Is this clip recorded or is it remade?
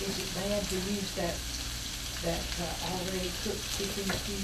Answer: recorded